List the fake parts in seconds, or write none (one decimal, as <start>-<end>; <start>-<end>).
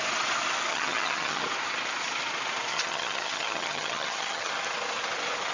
0.7-1.4; 2.7-4.5